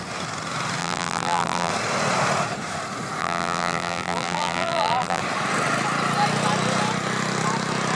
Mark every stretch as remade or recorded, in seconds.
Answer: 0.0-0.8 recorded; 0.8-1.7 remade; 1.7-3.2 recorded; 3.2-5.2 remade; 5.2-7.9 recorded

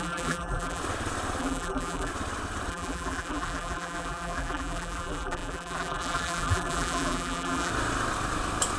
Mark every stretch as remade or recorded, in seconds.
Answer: 0.0-0.8 remade; 0.8-1.4 recorded; 1.4-2.1 remade; 2.1-2.7 recorded; 2.7-7.7 remade; 7.7-8.8 recorded

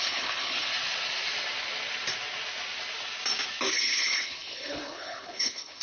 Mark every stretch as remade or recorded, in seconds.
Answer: 0.0-0.7 remade; 0.7-3.7 recorded; 3.7-5.8 remade

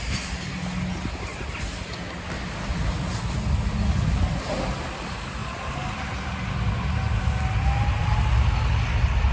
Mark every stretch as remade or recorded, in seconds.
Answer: 0.0-9.3 recorded